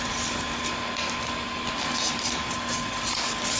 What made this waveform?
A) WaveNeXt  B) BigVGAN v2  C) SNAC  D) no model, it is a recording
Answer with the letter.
D